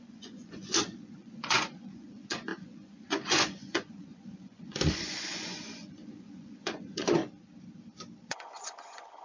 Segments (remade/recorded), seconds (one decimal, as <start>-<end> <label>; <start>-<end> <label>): 0.0-7.2 remade; 7.2-8.3 recorded; 8.3-9.2 remade